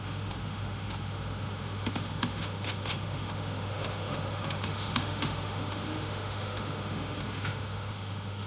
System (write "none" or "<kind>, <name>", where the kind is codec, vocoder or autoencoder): autoencoder, DAC-VAE